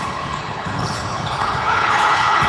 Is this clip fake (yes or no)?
yes